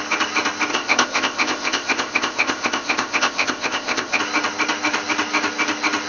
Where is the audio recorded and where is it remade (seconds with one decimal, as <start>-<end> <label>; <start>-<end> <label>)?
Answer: 0.0-0.7 recorded; 0.7-4.2 remade; 4.2-6.1 recorded